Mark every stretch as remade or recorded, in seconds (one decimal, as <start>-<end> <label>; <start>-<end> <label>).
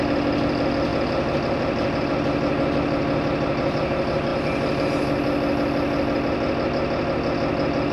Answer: 0.0-7.9 recorded